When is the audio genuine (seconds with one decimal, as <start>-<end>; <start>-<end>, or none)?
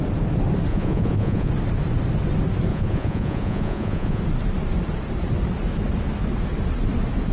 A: 0.0-0.7; 1.5-2.7; 4.2-7.3